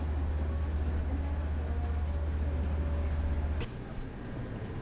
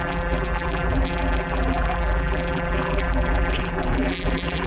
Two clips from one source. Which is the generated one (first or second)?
second